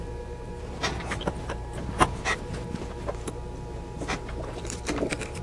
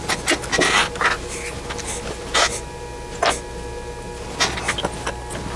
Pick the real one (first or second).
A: second